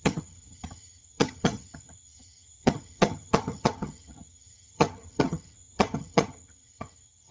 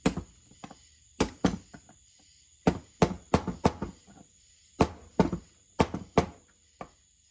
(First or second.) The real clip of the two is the second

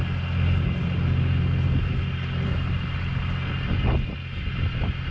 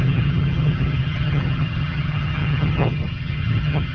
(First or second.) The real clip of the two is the first